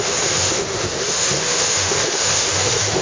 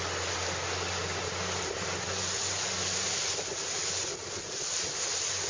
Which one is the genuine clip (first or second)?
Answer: second